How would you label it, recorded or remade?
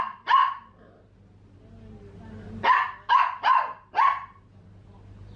recorded